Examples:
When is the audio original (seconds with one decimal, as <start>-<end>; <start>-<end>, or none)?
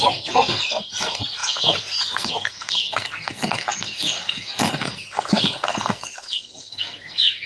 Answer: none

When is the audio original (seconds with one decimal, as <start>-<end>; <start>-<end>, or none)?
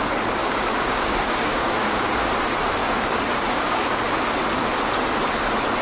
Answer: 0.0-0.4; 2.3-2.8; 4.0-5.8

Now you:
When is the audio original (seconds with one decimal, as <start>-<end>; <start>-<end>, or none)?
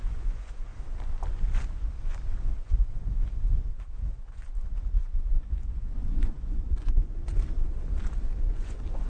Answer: 0.7-2.0; 4.4-5.0; 7.3-8.5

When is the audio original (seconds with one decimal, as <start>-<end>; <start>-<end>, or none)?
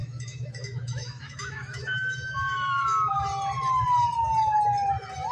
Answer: 3.2-5.3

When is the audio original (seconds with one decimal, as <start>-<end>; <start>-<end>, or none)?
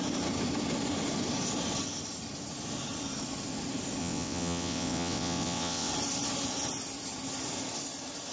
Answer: 0.0-4.0; 5.9-8.3